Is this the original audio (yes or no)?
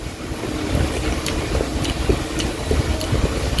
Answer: yes